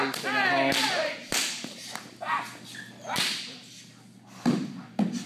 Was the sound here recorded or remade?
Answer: recorded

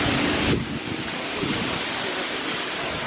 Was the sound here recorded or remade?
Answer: recorded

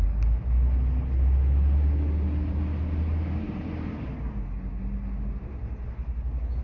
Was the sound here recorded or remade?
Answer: recorded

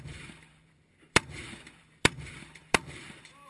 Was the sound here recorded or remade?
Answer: remade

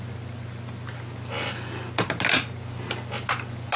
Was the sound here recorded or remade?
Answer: recorded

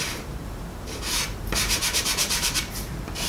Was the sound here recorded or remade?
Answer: remade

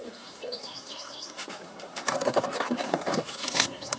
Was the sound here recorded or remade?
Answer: remade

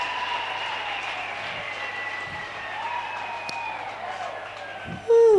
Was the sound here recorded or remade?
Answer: recorded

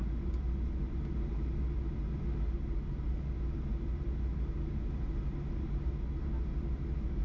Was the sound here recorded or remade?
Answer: recorded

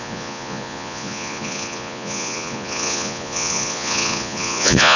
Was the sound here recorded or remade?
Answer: remade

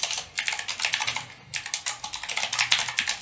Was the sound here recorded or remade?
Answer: recorded